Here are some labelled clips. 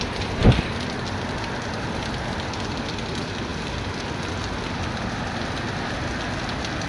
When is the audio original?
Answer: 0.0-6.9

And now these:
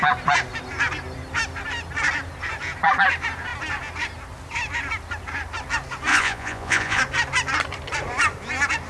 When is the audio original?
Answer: 0.0-6.1; 7.0-8.9

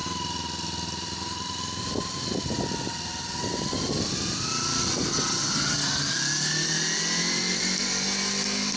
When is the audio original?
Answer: 0.0-5.1; 6.1-8.8

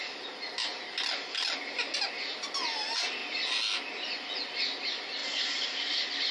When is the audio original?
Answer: 0.0-5.2; 5.8-6.3